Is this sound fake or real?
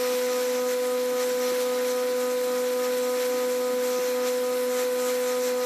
real